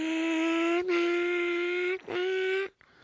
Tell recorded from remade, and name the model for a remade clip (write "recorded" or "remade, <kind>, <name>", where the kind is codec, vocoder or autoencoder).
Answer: recorded